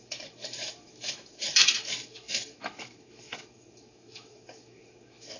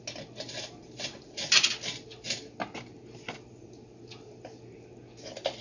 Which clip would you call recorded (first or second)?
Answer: second